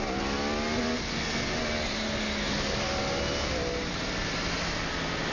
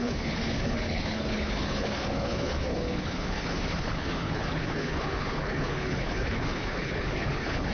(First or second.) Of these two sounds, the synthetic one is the second